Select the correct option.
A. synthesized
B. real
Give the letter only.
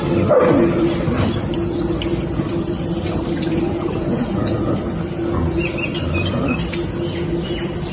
B